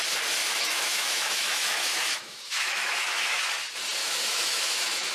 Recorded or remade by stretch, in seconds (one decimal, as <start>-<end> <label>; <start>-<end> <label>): 0.0-0.4 recorded; 0.4-3.5 remade; 3.5-4.0 recorded; 4.0-5.1 remade